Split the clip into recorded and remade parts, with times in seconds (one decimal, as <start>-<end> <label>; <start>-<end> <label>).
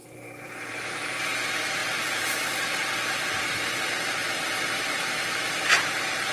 0.0-6.3 remade